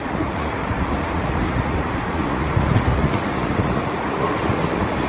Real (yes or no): no